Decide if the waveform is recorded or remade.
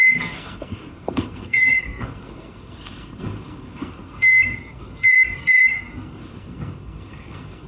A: remade